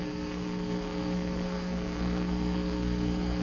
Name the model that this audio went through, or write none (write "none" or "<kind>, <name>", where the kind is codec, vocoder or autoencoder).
codec, SNAC